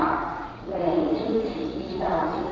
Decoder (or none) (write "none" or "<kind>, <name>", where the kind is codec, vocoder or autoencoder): vocoder, Vocos